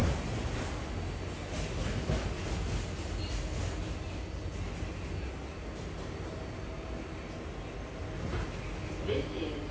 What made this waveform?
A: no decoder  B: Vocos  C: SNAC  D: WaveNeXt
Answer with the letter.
A